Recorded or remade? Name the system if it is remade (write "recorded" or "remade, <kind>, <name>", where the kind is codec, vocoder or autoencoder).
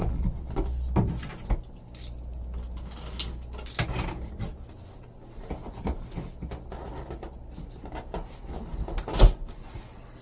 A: recorded